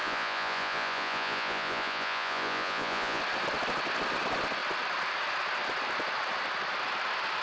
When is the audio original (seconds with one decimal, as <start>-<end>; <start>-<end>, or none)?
3.2-7.4